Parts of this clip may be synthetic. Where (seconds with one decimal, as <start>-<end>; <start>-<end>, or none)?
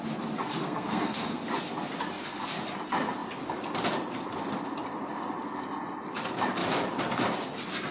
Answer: 0.6-1.4